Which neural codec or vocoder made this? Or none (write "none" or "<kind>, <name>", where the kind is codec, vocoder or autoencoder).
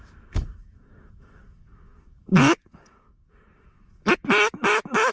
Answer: autoencoder, DAC-VAE